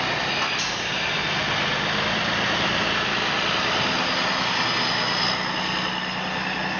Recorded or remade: recorded